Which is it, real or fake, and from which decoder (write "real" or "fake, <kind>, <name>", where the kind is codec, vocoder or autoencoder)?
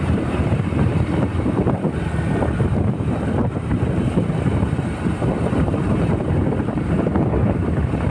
fake, vocoder, BigVGAN v2